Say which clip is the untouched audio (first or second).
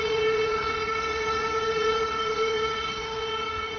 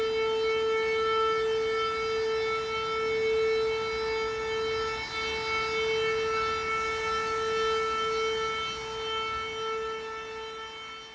second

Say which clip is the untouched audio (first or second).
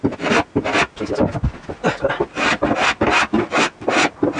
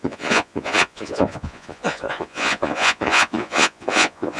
first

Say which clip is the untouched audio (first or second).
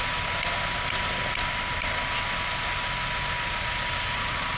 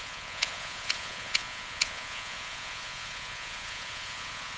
first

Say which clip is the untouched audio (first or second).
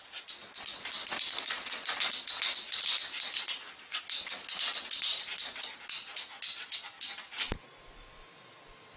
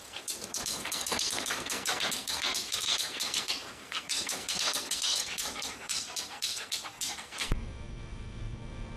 first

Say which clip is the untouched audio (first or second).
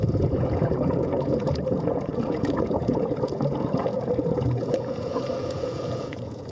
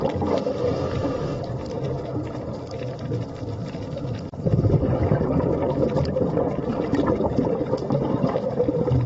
second